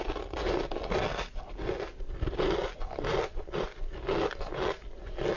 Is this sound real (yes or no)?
yes